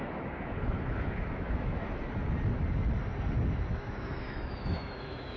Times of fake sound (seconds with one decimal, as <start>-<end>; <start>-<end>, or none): 0.0-2.0; 3.7-5.4